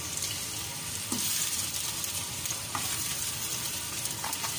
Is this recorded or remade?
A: recorded